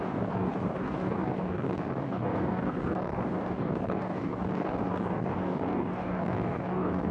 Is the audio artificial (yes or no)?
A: yes